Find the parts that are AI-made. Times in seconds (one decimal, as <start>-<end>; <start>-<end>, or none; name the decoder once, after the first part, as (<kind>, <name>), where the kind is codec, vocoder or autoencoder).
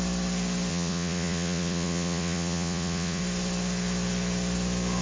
0.7-3.2 (vocoder, Vocos)